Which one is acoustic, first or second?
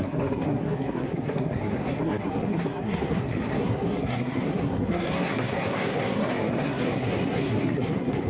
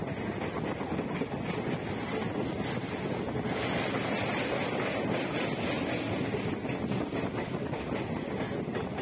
second